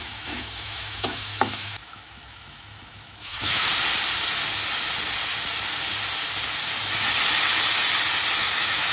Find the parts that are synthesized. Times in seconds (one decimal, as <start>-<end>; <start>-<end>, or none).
0.0-3.7; 8.4-8.9